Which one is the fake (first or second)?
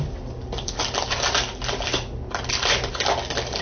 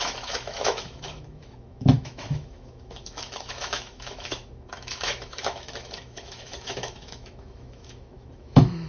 second